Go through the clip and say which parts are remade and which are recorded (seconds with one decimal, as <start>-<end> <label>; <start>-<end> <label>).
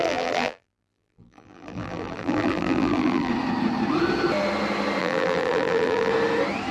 0.0-3.3 remade; 3.3-5.0 recorded; 5.0-6.1 remade; 6.1-6.7 recorded